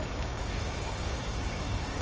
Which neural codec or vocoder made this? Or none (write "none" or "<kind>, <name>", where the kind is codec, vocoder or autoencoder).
codec, DAC